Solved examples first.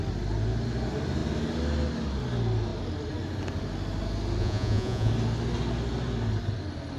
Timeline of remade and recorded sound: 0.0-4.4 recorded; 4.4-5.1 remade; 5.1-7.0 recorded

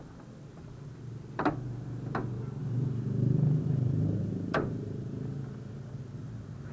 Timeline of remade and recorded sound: 0.0-2.6 recorded; 2.6-5.9 remade; 5.9-6.7 recorded

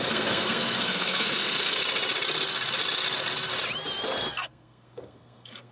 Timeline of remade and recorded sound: 0.0-1.8 remade; 1.8-4.3 recorded; 4.3-5.7 remade

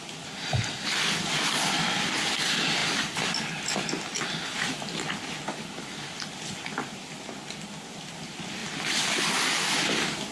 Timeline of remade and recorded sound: 0.0-10.3 remade

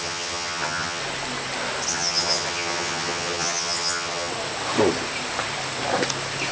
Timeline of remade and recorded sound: 0.0-1.0 remade; 1.0-1.9 recorded; 1.9-4.3 remade; 4.3-6.5 recorded